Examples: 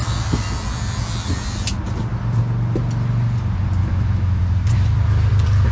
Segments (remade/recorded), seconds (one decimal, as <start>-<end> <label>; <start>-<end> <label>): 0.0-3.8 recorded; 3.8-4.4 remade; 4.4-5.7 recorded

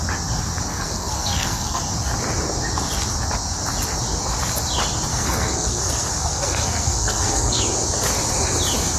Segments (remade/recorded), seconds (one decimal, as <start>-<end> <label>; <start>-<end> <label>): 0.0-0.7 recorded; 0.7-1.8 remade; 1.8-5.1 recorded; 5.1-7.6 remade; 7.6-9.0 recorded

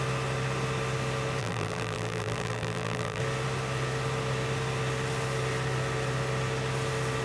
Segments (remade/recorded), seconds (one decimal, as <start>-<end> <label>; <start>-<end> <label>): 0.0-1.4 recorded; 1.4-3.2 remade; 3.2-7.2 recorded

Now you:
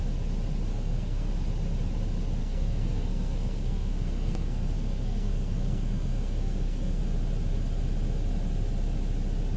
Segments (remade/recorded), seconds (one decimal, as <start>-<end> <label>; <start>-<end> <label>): 0.0-0.7 recorded; 0.7-1.3 remade; 1.3-2.4 recorded; 2.4-7.0 remade; 7.0-9.6 recorded

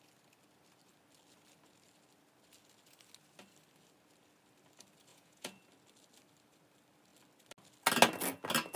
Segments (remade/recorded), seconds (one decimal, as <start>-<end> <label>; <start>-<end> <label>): 0.0-5.1 recorded; 5.1-5.6 remade; 5.6-8.8 recorded

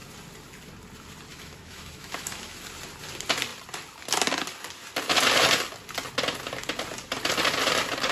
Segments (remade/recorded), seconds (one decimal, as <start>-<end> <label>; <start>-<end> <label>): 0.0-1.3 recorded; 1.3-2.6 remade; 2.6-8.1 recorded